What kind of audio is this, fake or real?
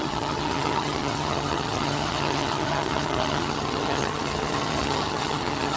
fake